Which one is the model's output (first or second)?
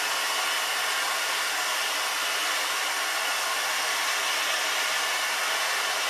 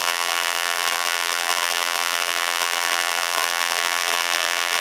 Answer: second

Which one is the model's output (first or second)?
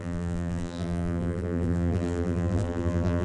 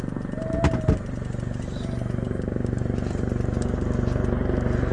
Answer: first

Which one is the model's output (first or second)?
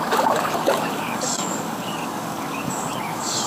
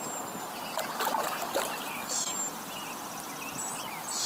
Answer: first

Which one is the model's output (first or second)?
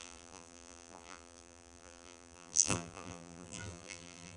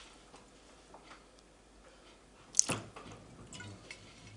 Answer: first